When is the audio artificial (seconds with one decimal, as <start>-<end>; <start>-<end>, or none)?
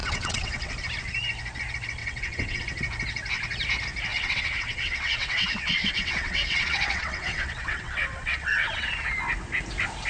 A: 0.0-0.7; 2.0-2.6; 4.1-8.9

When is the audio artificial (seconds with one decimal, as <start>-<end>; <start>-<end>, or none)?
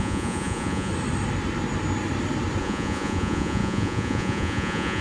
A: 0.0-0.9; 2.6-5.0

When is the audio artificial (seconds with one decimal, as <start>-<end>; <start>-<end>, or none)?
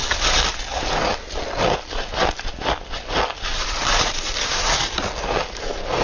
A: 3.5-4.7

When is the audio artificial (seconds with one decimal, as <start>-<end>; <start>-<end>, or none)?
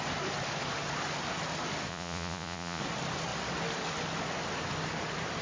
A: 1.9-2.8